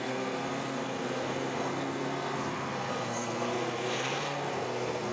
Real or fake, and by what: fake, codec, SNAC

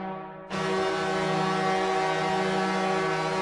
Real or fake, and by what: real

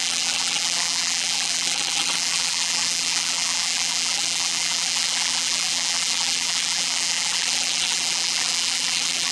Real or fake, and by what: fake, vocoder, BigVGAN v2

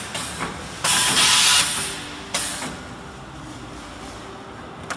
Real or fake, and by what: real